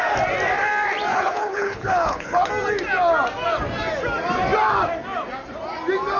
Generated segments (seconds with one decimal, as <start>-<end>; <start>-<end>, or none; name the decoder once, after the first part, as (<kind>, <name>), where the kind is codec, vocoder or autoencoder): 1.1-2.5 (codec, HILCodec)